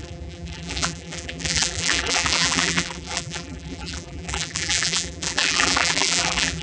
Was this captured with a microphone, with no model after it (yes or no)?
no